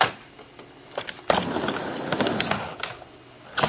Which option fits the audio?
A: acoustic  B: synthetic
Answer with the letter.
A